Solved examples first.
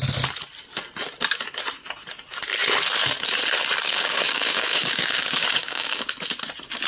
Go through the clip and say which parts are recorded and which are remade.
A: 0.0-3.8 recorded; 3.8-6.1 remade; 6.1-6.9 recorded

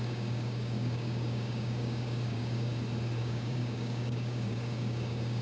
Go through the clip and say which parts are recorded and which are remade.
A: 0.0-2.7 remade; 2.7-3.2 recorded; 3.2-5.4 remade

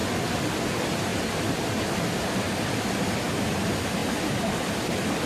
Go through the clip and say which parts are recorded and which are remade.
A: 0.0-5.3 recorded

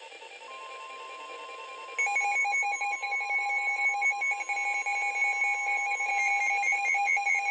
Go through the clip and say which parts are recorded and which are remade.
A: 0.0-2.4 recorded; 2.4-4.3 remade; 4.3-5.6 recorded; 5.6-6.1 remade; 6.1-7.5 recorded

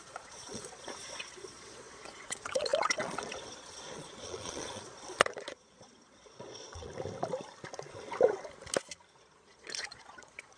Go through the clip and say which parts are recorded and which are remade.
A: 0.0-6.9 remade; 6.9-9.1 recorded; 9.1-10.6 remade